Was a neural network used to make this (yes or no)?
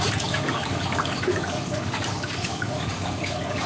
yes